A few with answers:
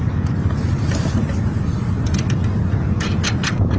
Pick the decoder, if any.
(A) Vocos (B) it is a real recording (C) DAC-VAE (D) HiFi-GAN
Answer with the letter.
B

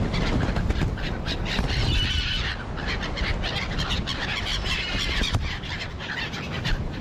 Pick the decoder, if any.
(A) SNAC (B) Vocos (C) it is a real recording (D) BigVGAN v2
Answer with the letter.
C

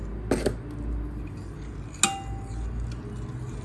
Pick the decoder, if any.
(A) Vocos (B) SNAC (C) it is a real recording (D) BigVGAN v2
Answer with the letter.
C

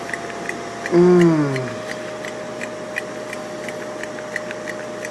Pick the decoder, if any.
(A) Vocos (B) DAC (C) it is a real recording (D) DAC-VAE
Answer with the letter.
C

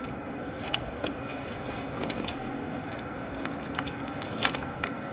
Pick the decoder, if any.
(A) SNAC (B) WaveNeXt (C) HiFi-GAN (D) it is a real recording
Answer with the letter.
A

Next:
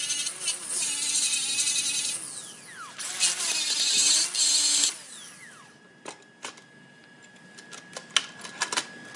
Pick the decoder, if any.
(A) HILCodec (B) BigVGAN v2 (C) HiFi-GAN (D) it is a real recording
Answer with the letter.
D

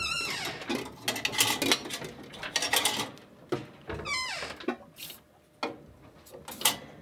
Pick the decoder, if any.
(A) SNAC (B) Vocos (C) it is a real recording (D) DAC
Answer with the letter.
C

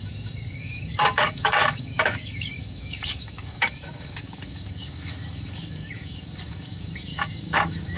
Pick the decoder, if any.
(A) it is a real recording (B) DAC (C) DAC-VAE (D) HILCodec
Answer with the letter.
B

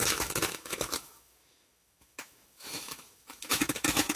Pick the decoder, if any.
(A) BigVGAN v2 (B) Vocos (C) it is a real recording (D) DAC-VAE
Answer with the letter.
D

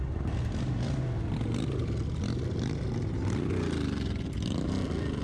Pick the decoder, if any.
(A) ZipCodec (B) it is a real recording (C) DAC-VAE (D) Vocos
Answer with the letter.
B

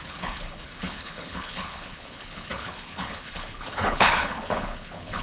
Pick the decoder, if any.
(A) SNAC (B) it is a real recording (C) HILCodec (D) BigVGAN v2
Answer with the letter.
C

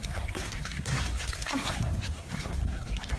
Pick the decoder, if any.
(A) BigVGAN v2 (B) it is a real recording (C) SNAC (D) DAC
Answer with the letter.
C